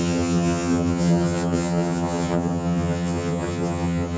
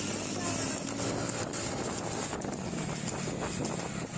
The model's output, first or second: first